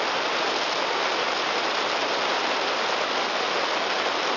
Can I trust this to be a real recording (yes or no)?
yes